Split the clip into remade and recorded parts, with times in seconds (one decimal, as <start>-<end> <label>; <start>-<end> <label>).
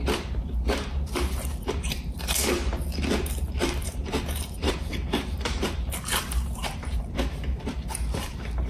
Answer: 0.0-2.6 remade; 2.6-3.3 recorded; 3.3-8.7 remade